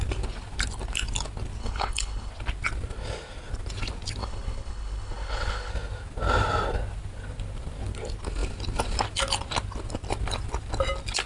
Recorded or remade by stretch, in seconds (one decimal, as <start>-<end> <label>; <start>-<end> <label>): 0.0-1.6 recorded; 1.6-2.3 remade; 2.3-4.2 recorded; 4.2-5.7 remade; 5.7-11.3 recorded